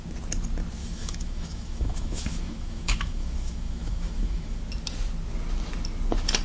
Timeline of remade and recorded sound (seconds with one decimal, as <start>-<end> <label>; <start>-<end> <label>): 0.0-0.8 recorded; 0.8-4.6 remade; 4.6-6.4 recorded